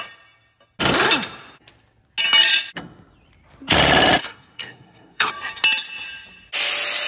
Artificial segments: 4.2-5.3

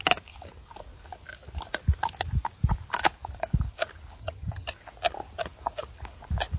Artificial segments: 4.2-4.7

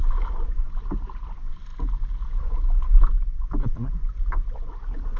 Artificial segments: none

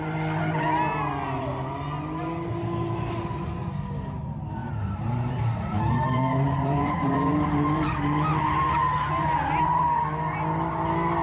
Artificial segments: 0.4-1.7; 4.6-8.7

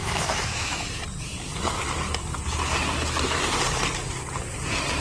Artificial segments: 0.0-1.0

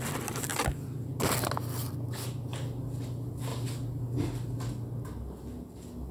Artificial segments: none